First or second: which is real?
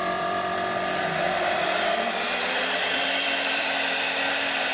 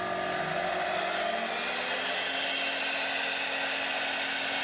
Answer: second